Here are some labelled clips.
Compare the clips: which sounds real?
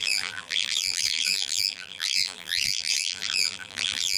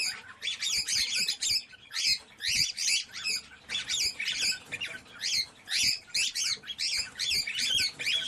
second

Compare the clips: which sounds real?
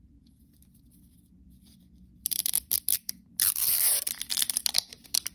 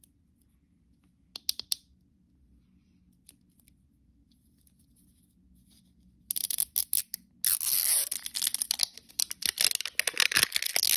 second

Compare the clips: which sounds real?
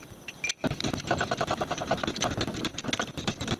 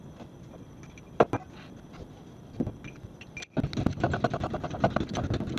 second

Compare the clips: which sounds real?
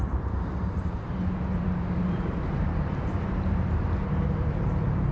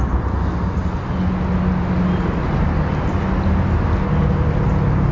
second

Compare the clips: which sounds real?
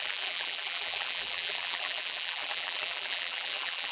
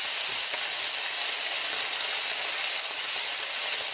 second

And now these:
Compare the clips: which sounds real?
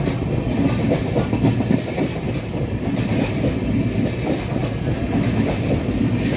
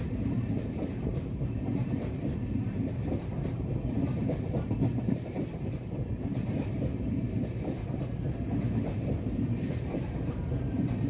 first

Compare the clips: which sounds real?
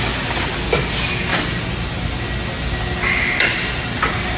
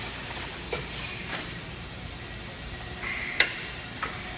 first